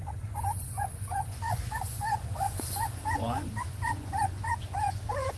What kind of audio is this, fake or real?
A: fake